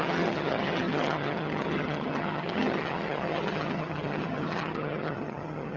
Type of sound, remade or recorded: remade